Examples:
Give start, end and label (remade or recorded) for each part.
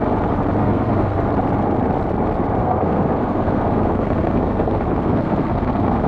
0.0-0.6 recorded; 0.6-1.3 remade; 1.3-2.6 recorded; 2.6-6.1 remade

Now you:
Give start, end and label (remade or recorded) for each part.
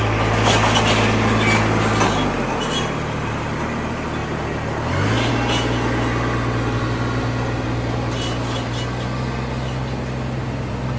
0.0-11.0 recorded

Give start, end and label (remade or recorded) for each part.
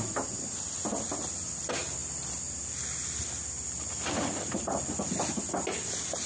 0.0-6.3 recorded